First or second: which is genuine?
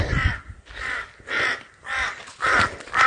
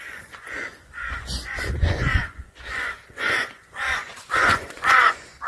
first